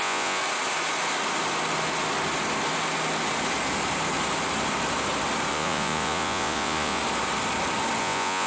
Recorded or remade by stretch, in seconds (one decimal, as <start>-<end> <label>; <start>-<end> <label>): 0.0-0.4 remade; 0.4-5.5 recorded; 5.5-7.0 remade; 7.0-8.0 recorded; 8.0-8.5 remade